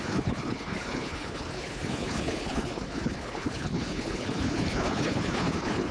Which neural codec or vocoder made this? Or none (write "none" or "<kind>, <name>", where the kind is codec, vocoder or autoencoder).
codec, HILCodec